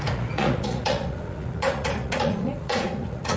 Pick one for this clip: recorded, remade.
remade